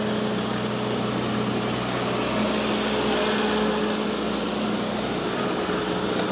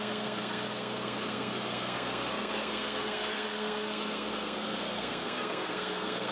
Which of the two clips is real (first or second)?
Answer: first